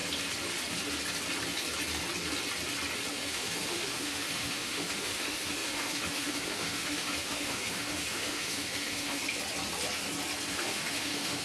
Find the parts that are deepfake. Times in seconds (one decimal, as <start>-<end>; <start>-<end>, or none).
3.1-9.2; 10.5-11.4